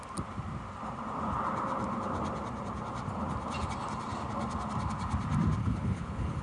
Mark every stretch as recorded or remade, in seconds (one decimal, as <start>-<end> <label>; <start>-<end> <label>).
0.0-5.6 recorded; 5.6-6.4 remade